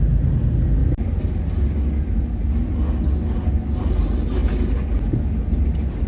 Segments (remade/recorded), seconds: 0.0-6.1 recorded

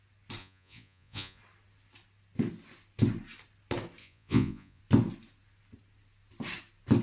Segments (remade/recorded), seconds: 0.0-0.4 recorded; 0.4-1.4 remade; 1.4-4.0 recorded; 4.0-4.8 remade; 4.8-7.0 recorded

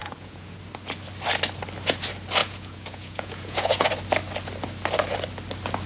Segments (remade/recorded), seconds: 0.0-0.6 remade; 0.6-2.4 recorded; 2.4-3.9 remade; 3.9-5.9 recorded

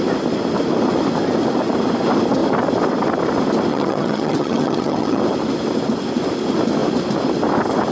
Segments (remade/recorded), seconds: 0.0-3.7 recorded; 3.7-5.2 remade; 5.2-7.9 recorded

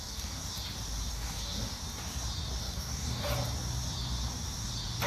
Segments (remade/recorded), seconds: 0.0-0.4 remade; 0.4-1.1 recorded; 1.1-1.8 remade; 1.8-2.6 recorded; 2.6-3.3 remade; 3.3-5.1 recorded

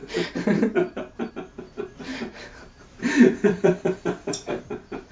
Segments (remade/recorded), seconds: 0.0-1.3 remade; 1.3-2.1 recorded; 2.1-5.1 remade

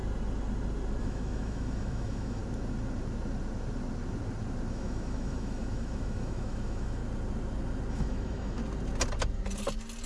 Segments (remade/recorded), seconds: 0.0-1.0 recorded; 1.0-2.4 remade; 2.4-4.7 recorded; 4.7-7.0 remade; 7.0-7.9 recorded; 7.9-8.6 remade; 8.6-10.1 recorded